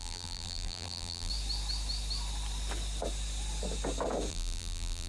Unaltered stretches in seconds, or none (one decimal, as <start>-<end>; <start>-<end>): 1.3-4.3